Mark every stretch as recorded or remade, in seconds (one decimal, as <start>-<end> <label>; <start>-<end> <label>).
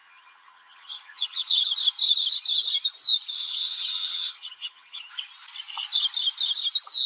0.0-1.7 remade; 1.7-3.4 recorded; 3.4-5.1 remade; 5.1-7.1 recorded